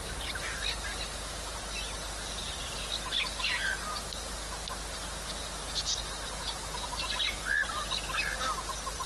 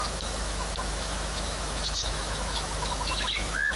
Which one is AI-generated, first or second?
second